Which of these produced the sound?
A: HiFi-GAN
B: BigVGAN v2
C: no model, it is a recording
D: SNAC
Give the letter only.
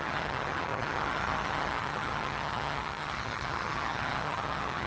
A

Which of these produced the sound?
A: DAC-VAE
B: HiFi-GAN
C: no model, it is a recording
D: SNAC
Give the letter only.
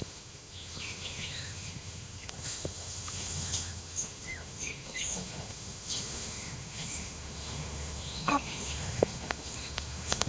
A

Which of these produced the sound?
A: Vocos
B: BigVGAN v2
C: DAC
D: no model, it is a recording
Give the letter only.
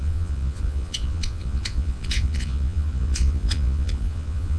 A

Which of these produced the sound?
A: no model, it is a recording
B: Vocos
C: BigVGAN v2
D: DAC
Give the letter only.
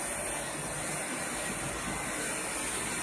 A